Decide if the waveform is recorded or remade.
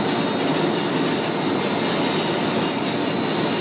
recorded